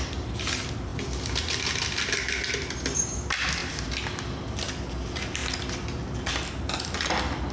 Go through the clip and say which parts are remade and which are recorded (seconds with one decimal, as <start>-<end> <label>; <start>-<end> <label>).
0.0-7.5 recorded